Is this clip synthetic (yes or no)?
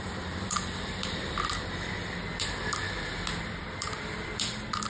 yes